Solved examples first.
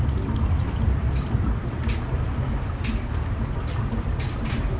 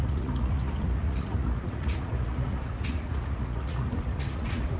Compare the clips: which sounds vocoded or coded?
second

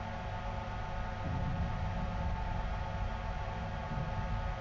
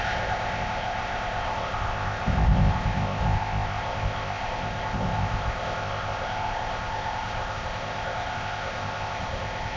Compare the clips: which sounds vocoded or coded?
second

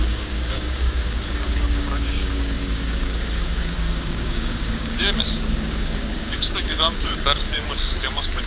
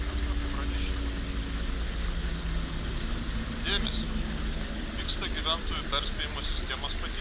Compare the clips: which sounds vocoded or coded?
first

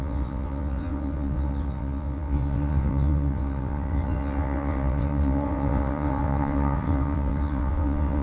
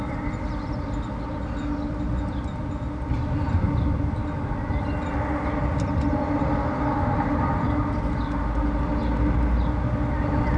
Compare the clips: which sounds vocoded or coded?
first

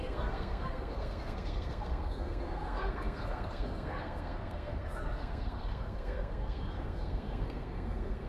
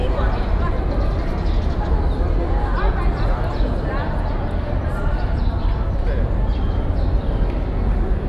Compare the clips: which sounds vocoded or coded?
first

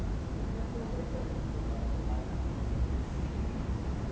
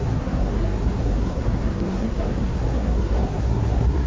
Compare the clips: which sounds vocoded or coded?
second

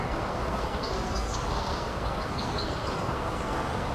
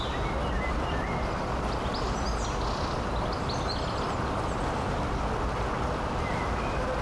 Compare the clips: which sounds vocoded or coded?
first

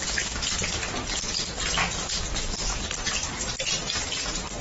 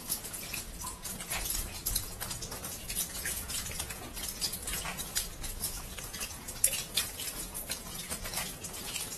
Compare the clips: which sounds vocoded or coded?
second